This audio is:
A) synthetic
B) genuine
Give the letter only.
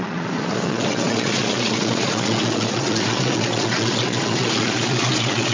A